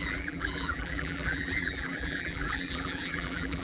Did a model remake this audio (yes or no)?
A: yes